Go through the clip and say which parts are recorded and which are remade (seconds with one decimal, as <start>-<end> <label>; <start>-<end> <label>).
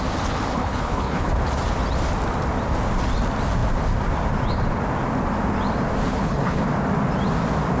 0.0-0.5 recorded; 0.5-1.3 remade; 1.3-6.1 recorded; 6.1-6.6 remade; 6.6-7.8 recorded